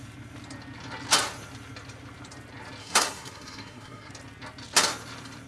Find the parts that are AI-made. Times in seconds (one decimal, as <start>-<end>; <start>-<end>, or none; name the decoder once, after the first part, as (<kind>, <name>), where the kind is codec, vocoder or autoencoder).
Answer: 2.8-4.1 (codec, SNAC)